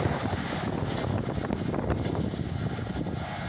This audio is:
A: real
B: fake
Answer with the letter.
A